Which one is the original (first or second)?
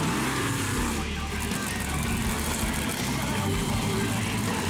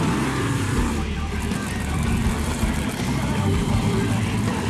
first